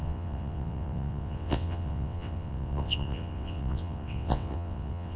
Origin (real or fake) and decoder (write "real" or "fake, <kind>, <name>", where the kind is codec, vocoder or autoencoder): fake, vocoder, WaveNeXt